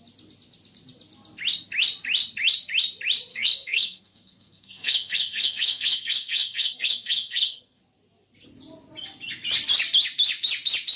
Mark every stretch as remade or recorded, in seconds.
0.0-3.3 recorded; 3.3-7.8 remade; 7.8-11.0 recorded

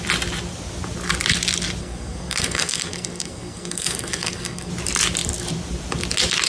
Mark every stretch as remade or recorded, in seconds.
0.0-1.8 recorded; 1.8-4.7 remade; 4.7-6.5 recorded

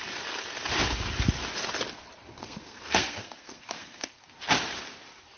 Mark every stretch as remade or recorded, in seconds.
0.0-2.4 recorded; 2.4-4.3 remade; 4.3-5.4 recorded

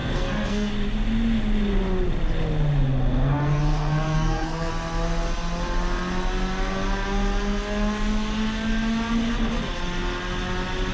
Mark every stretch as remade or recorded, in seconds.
0.0-0.7 remade; 0.7-3.1 recorded; 3.1-4.7 remade; 4.7-10.9 recorded

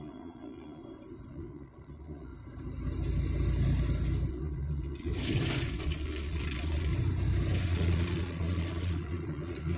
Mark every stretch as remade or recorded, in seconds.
0.0-0.8 remade; 0.8-1.3 recorded; 1.3-2.3 remade; 2.3-4.3 recorded; 4.3-5.1 remade; 5.1-5.8 recorded; 5.8-6.9 remade; 6.9-7.6 recorded; 7.6-9.8 remade